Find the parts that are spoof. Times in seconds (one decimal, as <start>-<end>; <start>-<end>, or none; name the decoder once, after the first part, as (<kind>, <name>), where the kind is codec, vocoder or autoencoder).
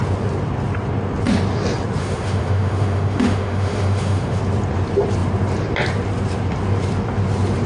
2.0-4.4 (autoencoder, DAC-VAE)